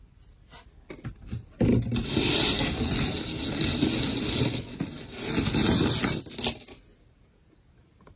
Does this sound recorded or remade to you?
recorded